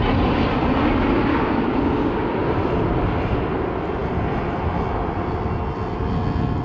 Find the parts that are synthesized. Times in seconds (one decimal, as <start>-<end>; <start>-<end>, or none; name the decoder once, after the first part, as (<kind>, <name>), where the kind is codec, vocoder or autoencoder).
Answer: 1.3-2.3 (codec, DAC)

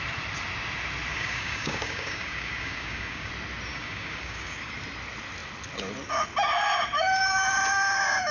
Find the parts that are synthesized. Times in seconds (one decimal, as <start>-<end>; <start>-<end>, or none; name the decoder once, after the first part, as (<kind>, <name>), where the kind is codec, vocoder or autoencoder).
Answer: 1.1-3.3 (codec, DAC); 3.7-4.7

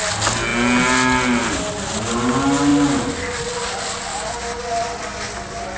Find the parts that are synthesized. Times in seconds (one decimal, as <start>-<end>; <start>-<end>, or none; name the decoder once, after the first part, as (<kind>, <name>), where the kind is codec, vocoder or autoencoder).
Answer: 4.1-4.6 (codec, DAC)